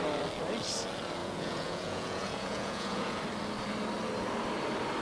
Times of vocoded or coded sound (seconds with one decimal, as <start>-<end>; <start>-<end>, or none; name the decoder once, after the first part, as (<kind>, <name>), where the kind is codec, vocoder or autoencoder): 1.2-3.2 (vocoder, Vocos)